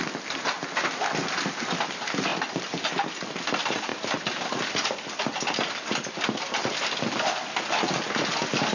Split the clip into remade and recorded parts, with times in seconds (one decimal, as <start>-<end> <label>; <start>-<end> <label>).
0.0-8.7 recorded